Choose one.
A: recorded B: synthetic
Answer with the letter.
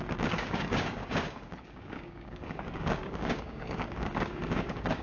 B